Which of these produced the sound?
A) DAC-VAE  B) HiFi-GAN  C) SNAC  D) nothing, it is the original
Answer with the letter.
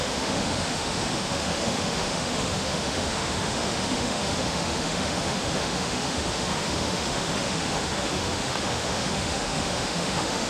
A